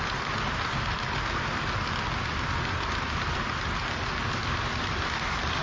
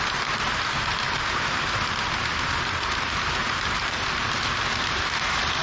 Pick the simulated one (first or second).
second